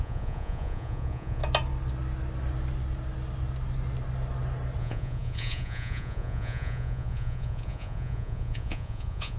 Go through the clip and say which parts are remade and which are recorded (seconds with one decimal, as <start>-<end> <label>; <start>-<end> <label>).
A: 0.0-1.4 remade; 1.4-4.8 recorded; 4.8-9.4 remade